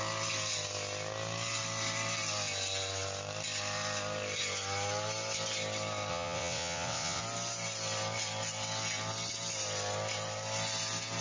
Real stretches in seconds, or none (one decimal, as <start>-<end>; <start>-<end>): 0.0-6.1; 7.2-11.2